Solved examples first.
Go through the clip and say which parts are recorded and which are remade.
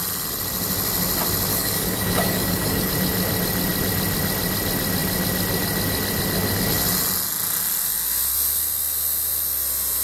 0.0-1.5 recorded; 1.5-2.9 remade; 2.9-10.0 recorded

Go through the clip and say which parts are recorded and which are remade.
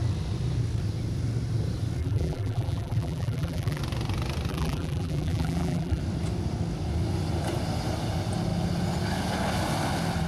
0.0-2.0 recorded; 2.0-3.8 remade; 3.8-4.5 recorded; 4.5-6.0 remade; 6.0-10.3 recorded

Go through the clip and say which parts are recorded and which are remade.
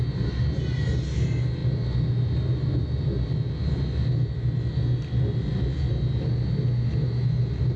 0.0-7.8 recorded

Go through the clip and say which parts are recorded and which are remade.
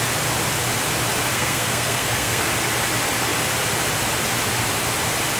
0.0-1.3 recorded; 1.3-2.5 remade; 2.5-5.4 recorded